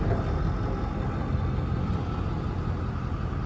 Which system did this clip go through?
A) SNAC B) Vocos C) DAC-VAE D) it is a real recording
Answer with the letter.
D